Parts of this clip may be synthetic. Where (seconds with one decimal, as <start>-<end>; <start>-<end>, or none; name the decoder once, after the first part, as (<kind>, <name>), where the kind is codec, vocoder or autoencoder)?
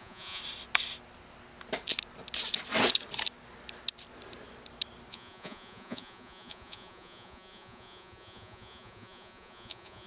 0.0-0.4 (vocoder, Vocos); 5.1-10.1